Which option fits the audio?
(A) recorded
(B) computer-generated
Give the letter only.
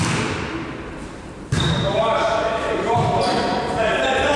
B